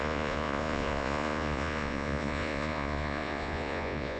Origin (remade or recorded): remade